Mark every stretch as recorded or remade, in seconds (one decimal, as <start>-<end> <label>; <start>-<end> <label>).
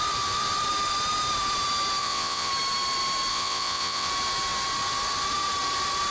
0.0-2.0 recorded; 2.0-2.5 remade; 2.5-3.3 recorded; 3.3-4.1 remade; 4.1-6.1 recorded